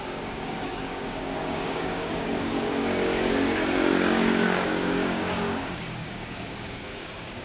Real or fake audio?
fake